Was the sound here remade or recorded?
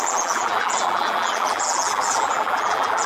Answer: remade